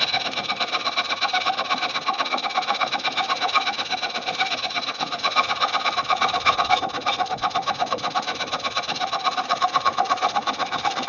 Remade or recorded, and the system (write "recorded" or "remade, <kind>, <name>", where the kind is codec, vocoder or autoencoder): remade, autoencoder, DAC-VAE